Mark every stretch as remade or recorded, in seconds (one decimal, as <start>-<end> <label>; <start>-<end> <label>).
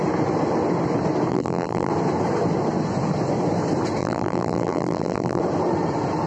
0.0-1.3 recorded; 1.3-1.9 remade; 1.9-4.0 recorded; 4.0-5.4 remade; 5.4-6.3 recorded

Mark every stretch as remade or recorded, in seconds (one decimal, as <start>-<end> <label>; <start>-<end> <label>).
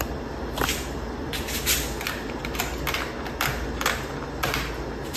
0.0-5.2 recorded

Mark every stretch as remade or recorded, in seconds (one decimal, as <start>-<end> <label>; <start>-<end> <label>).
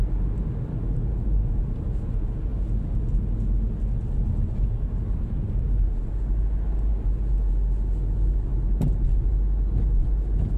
0.0-10.6 recorded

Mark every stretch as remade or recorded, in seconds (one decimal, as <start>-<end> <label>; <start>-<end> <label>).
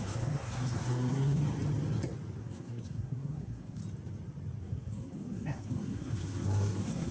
0.0-1.4 remade; 1.4-2.4 recorded; 2.4-3.8 remade; 3.8-4.6 recorded; 4.6-7.1 remade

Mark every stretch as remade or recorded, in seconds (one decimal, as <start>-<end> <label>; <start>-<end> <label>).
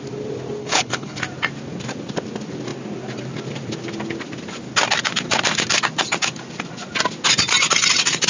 0.0-0.6 recorded; 0.6-1.2 remade; 1.2-8.3 recorded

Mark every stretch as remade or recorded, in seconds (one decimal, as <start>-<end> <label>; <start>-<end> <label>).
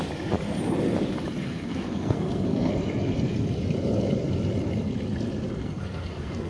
0.0-1.4 recorded; 1.4-2.7 remade; 2.7-5.6 recorded; 5.6-6.5 remade